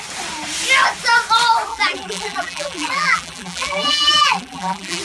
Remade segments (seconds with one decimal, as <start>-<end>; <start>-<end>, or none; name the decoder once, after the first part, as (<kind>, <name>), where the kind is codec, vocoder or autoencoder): 1.7-5.0 (vocoder, BigVGAN v2)

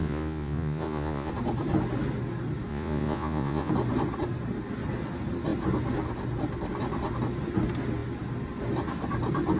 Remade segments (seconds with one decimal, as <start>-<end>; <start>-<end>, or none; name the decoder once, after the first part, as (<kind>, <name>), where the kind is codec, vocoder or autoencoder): 0.0-1.3 (vocoder, Vocos); 2.7-3.7

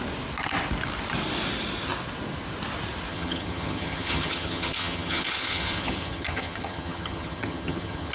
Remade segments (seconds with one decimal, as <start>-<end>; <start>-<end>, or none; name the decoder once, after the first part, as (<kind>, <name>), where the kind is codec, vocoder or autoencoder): 3.1-8.1 (vocoder, HiFi-GAN)

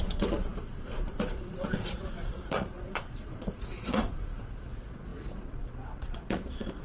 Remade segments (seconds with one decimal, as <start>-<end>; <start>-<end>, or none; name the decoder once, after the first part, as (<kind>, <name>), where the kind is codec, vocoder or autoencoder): 0.0-6.8 (vocoder, Vocos)